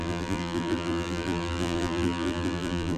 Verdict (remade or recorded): remade